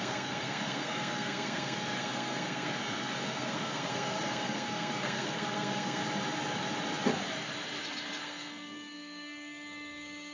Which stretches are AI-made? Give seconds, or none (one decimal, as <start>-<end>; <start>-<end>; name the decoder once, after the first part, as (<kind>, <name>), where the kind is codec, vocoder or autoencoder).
0.0-6.0 (codec, SNAC); 8.2-10.3